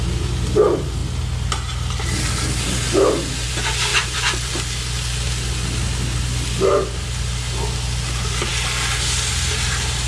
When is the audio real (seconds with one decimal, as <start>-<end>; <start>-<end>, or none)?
0.0-3.9; 4.5-10.1